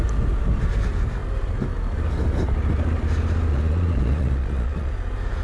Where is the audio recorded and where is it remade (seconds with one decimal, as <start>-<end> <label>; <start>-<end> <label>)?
0.0-3.5 recorded; 3.5-4.9 remade; 4.9-5.4 recorded